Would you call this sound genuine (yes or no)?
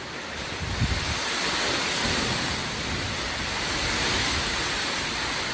yes